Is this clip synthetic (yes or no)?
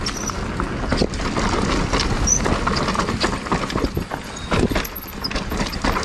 no